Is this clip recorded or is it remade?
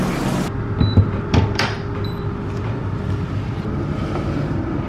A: remade